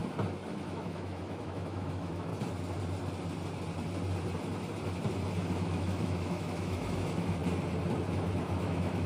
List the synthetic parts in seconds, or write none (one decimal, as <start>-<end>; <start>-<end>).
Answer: 0.5-2.3; 5.4-7.4; 8.4-9.1

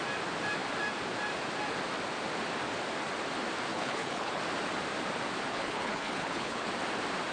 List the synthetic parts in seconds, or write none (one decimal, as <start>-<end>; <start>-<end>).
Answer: 3.7-4.4; 5.5-6.7

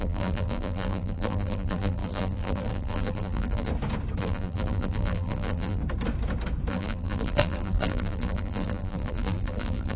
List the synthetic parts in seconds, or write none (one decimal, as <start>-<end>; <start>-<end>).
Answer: 0.0-3.7; 4.2-5.8; 6.7-10.0

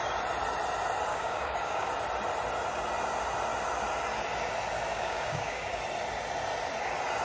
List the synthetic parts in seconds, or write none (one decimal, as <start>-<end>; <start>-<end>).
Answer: 1.1-1.9; 4.9-5.8

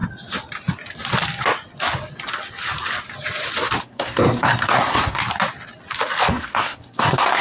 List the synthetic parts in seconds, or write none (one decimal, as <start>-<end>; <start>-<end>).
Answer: 3.8-5.2; 6.3-7.4

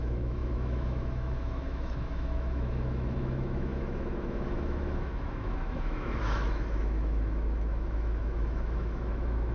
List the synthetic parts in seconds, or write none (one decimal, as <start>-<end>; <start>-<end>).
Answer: 0.0-9.5